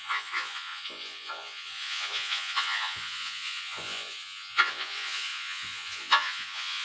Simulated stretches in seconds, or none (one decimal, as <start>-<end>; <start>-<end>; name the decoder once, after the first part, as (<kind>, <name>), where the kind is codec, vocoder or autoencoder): 0.0-6.8 (vocoder, Vocos)